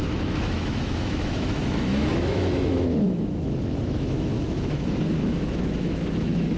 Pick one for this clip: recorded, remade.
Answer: remade